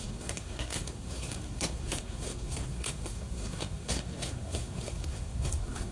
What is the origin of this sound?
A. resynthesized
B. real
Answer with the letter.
A